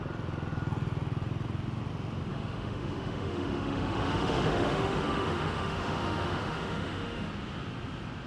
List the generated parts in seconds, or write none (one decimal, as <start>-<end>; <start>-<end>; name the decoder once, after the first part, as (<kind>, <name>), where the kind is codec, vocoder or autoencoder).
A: 2.3-7.3 (autoencoder, DAC-VAE)